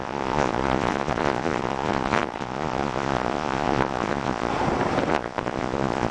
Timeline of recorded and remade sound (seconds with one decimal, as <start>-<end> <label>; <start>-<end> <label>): 0.0-4.5 remade; 4.5-5.1 recorded; 5.1-6.1 remade